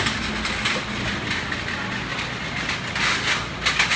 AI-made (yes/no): no